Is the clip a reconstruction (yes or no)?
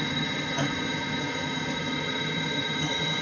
yes